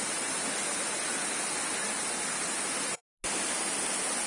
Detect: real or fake real